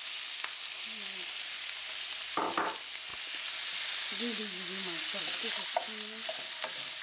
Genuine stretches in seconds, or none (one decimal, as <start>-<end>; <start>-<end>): 0.0-7.0